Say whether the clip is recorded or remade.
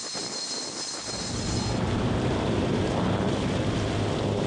recorded